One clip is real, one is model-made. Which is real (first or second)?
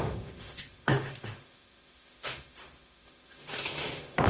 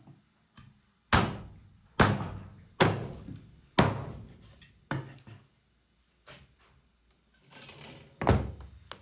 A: second